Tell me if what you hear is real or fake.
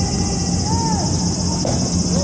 real